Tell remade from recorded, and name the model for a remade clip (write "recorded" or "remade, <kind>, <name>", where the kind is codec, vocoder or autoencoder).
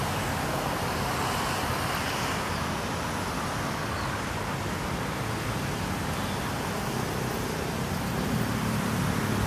recorded